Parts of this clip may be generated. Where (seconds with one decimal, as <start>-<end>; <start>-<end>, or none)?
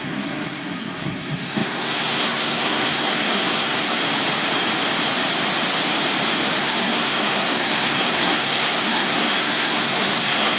0.0-4.0; 6.6-10.6